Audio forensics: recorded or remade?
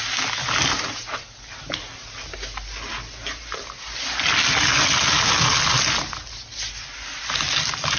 recorded